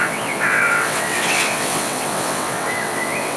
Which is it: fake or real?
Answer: fake